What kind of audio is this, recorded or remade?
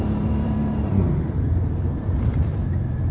remade